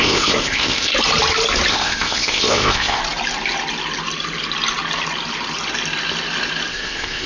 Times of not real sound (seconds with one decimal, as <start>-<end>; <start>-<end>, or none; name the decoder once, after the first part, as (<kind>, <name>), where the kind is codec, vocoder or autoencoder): 0.0-0.9 (codec, ZipCodec); 1.7-3.0; 6.7-7.3